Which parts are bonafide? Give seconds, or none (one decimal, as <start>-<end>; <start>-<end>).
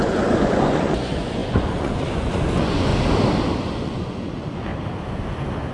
2.9-3.7; 4.7-5.7